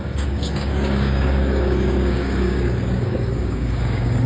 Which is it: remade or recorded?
remade